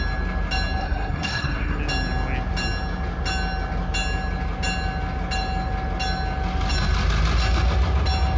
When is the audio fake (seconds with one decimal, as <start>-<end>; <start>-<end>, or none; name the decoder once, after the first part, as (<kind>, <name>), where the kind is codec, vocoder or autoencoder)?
0.8-1.8 (codec, SNAC)